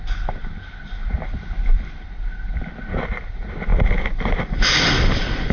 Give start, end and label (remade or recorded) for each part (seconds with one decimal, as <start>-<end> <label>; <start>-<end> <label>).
0.0-5.5 recorded